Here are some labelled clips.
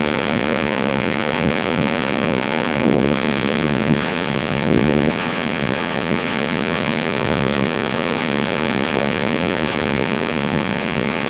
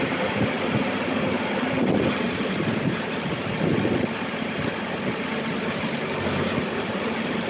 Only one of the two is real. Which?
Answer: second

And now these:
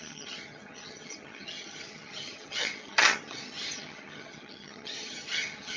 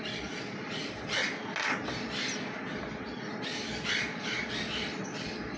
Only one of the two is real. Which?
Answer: second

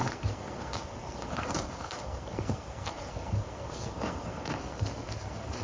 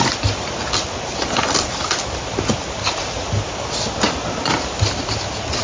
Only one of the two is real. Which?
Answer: second